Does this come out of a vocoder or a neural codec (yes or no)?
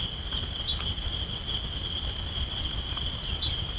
no